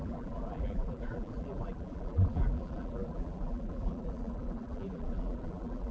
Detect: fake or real fake